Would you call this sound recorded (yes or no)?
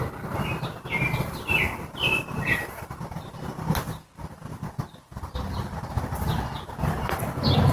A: yes